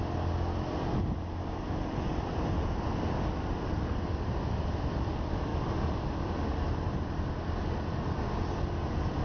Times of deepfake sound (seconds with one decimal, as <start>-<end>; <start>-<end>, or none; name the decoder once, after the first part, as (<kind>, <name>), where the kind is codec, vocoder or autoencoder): none